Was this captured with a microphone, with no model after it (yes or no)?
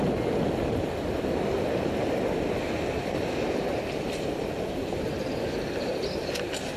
yes